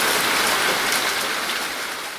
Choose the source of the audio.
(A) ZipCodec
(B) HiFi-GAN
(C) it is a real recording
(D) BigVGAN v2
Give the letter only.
C